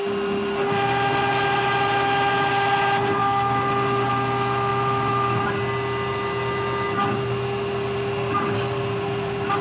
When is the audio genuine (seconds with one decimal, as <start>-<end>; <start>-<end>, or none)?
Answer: 0.0-9.6